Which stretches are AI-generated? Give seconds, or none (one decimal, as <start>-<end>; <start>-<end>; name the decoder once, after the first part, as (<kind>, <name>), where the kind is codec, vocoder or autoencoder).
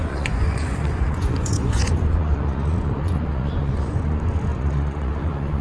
0.0-5.6 (vocoder, Vocos)